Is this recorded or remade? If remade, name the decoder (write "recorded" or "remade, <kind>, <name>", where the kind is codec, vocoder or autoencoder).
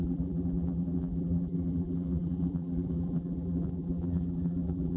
remade, vocoder, BigVGAN v2